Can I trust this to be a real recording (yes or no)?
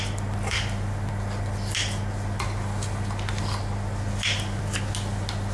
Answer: yes